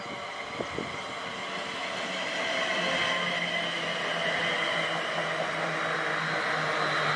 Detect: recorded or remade recorded